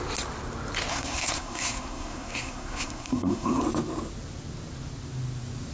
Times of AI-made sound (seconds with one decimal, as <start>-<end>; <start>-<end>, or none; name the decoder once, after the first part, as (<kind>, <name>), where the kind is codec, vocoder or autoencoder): 0.9-3.6 (codec, SNAC)